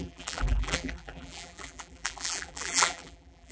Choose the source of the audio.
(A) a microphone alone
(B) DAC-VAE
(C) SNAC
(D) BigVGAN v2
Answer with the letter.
D